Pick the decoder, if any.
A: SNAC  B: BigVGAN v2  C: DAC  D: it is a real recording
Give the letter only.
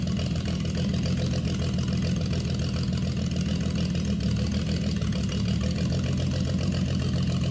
D